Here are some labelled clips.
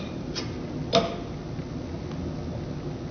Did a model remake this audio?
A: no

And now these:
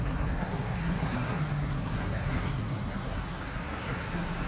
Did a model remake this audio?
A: yes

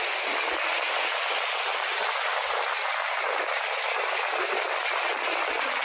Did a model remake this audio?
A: yes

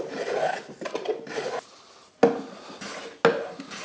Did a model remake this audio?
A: no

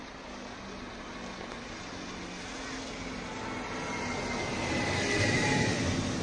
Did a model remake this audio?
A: no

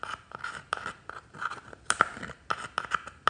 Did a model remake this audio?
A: no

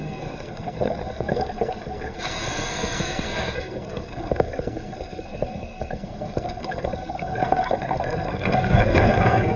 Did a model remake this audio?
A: yes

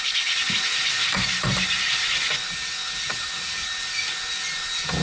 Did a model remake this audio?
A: no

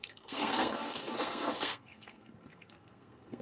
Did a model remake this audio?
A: yes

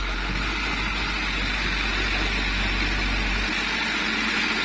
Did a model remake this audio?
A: no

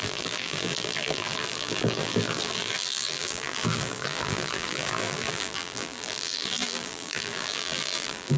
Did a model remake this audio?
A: yes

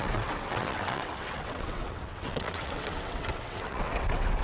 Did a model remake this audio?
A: yes